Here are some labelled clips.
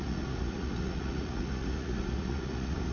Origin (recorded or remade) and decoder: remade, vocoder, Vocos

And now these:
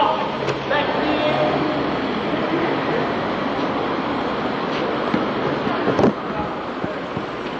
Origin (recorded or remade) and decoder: recorded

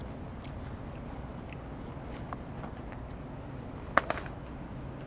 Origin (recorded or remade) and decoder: recorded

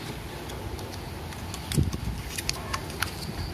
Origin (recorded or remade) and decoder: recorded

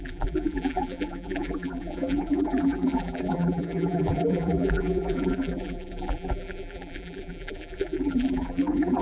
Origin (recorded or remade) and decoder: remade, vocoder, BigVGAN v2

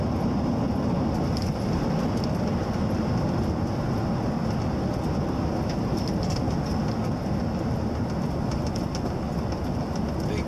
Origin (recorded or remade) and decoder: recorded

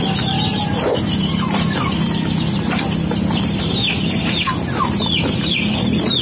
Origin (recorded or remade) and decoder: recorded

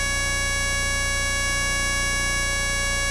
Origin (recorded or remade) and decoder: recorded